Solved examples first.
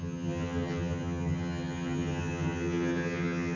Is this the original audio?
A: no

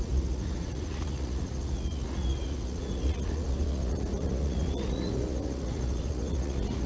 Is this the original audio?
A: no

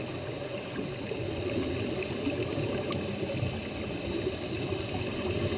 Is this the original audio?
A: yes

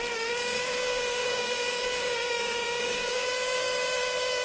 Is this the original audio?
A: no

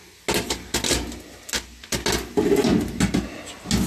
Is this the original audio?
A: yes